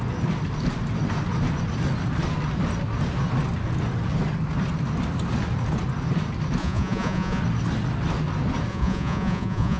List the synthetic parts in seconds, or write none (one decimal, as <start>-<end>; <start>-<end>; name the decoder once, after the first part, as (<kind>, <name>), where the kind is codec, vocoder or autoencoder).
6.6-7.4 (vocoder, Vocos); 8.7-9.8